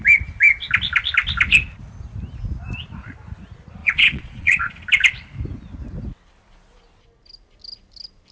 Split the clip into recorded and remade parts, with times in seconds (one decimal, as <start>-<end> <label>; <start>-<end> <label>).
0.0-3.8 recorded; 3.8-4.7 remade; 4.7-8.3 recorded